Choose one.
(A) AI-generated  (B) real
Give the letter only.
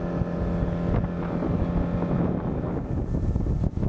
B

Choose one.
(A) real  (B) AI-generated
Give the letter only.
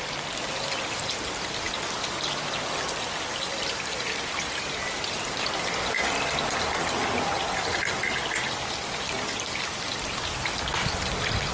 A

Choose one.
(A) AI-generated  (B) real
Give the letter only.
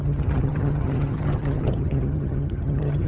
A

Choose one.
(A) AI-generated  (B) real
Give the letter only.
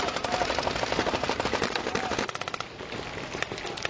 B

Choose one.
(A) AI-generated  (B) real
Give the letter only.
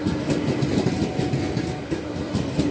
B